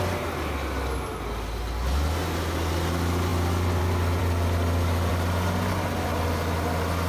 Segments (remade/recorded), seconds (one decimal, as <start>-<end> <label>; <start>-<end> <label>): 0.0-7.1 recorded